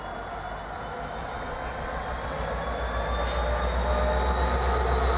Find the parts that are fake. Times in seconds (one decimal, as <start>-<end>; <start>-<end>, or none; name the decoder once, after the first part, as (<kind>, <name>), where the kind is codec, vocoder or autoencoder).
1.2-2.4 (vocoder, WaveNeXt)